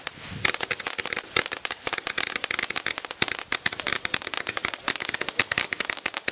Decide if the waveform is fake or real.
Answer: fake